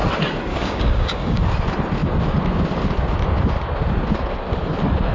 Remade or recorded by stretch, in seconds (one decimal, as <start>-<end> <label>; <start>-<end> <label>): 0.0-0.5 recorded; 0.5-1.4 remade; 1.4-5.1 recorded